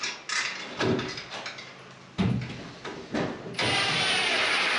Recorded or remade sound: recorded